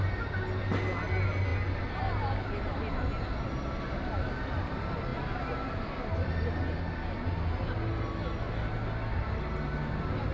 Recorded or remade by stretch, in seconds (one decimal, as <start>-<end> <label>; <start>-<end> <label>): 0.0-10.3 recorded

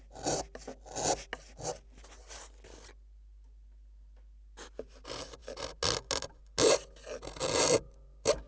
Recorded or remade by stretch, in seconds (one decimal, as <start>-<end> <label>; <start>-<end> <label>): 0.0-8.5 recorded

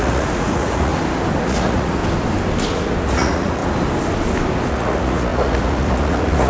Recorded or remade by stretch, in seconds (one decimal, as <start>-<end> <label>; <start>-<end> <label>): 0.0-0.9 remade; 0.9-1.4 recorded; 1.4-2.0 remade; 2.0-2.7 recorded; 2.7-3.6 remade; 3.6-4.7 recorded; 4.7-6.5 remade

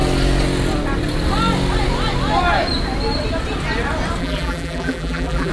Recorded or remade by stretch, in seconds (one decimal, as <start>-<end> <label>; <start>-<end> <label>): 0.0-4.2 recorded; 4.2-5.5 remade

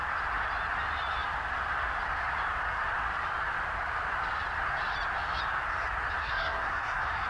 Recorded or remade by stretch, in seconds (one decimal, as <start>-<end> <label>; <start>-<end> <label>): 0.0-6.2 recorded; 6.2-7.3 remade